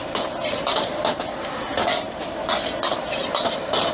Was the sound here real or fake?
real